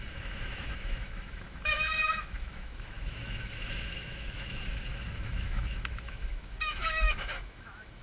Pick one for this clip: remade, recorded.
remade